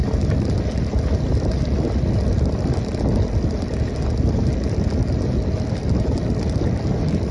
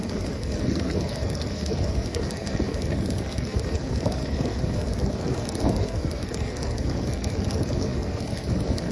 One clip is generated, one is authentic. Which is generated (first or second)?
second